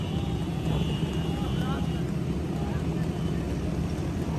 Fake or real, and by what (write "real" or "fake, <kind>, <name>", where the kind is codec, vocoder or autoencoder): real